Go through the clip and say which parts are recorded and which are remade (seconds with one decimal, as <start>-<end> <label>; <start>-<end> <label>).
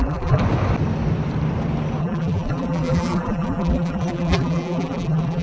0.0-0.4 remade; 0.4-2.0 recorded; 2.0-5.4 remade